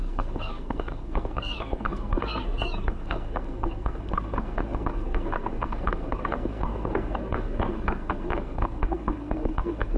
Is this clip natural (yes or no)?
no